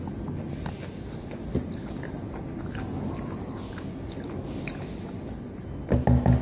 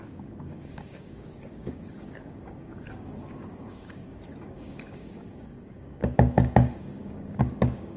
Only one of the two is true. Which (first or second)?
first